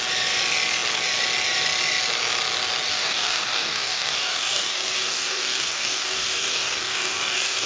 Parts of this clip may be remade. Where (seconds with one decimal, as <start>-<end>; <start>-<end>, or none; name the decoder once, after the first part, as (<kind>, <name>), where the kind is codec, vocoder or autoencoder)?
2.9-7.7 (codec, DAC)